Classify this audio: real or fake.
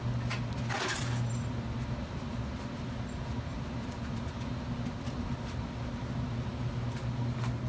real